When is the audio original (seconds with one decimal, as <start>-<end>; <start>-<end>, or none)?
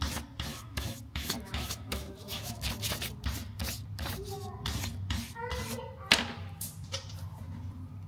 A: 0.0-0.5; 2.6-8.1